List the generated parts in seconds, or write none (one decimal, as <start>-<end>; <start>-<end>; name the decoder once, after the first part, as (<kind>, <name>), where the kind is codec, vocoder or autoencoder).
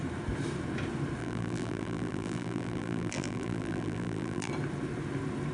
1.2-4.5 (vocoder, BigVGAN v2)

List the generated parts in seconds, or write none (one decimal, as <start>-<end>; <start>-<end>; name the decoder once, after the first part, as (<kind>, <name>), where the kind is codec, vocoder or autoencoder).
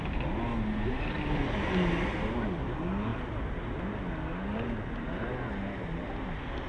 none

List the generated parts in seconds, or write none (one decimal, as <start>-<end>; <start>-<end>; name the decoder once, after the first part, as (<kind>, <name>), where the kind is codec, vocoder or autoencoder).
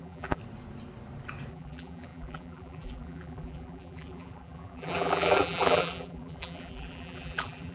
0.0-0.4 (vocoder, BigVGAN v2); 1.5-7.7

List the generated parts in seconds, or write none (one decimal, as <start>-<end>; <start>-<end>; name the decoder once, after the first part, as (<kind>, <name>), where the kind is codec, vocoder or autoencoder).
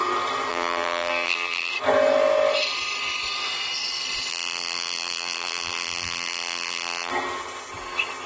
0.5-1.7 (vocoder, BigVGAN v2); 4.3-7.1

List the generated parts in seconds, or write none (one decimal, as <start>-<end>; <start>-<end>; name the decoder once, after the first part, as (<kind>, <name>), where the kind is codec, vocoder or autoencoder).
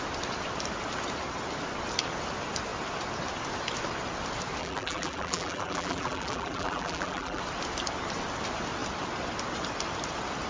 4.6-7.4 (vocoder, BigVGAN v2)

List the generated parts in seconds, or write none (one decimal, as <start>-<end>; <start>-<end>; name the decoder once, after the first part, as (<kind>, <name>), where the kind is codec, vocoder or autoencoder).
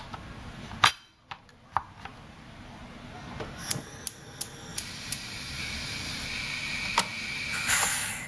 none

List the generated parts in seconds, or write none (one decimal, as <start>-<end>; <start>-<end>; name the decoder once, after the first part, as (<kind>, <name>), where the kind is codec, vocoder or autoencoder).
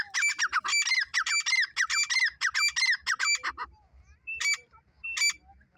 3.6-4.7 (vocoder, BigVGAN v2)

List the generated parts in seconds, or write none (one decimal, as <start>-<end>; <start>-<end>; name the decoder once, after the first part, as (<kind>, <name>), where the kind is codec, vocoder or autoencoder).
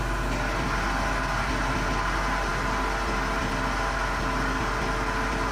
none